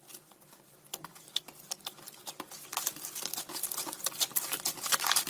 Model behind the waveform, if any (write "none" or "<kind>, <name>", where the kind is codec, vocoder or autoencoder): none